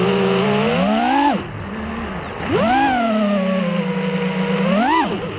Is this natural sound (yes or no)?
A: yes